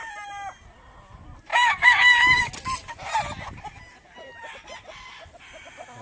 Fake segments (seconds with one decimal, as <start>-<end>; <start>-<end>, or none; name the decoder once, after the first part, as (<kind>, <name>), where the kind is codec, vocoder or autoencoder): 1.5-2.5 (codec, DAC)